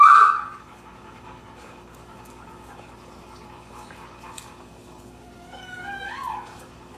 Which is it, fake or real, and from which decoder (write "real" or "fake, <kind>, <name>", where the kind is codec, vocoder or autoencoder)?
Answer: fake, codec, DAC